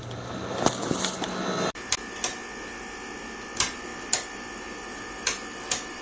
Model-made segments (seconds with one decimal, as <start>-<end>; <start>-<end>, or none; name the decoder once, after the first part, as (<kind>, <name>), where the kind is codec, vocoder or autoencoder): 0.0-0.4 (vocoder, BigVGAN v2); 2.8-6.0